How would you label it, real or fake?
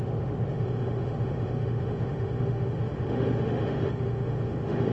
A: fake